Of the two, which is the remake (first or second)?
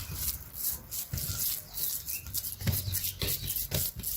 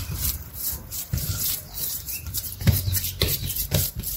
second